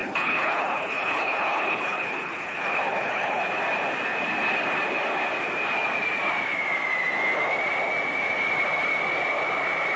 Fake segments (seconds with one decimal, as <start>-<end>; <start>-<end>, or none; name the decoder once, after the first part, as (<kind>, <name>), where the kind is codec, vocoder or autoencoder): 0.0-3.4 (codec, HILCodec)